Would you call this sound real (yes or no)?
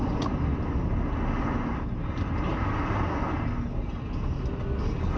yes